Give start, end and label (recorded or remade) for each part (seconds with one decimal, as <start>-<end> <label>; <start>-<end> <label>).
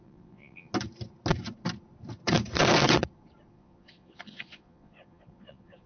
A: 0.0-0.7 remade; 0.7-3.5 recorded; 3.5-5.9 remade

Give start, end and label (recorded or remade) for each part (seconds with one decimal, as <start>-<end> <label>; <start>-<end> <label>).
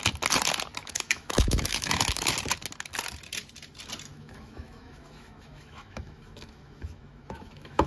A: 0.0-0.8 recorded; 0.8-2.3 remade; 2.3-4.1 recorded; 4.1-7.9 remade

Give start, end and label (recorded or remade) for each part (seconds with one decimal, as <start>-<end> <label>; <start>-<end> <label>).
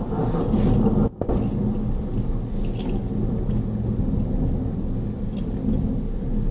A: 0.0-6.5 recorded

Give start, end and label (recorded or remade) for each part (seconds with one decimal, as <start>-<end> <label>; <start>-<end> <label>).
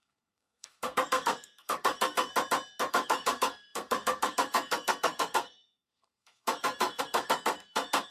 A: 0.0-2.3 remade; 2.3-2.9 recorded; 2.9-8.1 remade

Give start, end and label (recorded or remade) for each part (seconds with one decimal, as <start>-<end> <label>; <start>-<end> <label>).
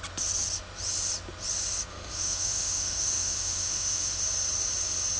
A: 0.0-1.9 recorded; 1.9-4.2 remade; 4.2-5.2 recorded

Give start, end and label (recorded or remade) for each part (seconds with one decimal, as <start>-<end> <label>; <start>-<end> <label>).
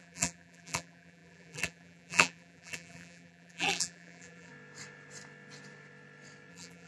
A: 0.0-4.5 remade; 4.5-6.5 recorded; 6.5-6.9 remade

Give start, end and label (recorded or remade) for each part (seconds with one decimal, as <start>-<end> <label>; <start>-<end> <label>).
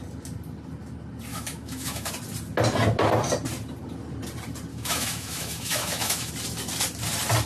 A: 0.0-1.3 recorded; 1.3-2.1 remade; 2.1-4.7 recorded; 4.7-6.3 remade; 6.3-7.5 recorded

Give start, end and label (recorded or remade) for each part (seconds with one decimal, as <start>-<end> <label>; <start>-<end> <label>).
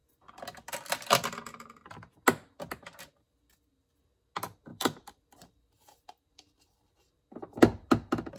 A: 0.0-4.7 recorded; 4.7-7.2 remade; 7.2-8.4 recorded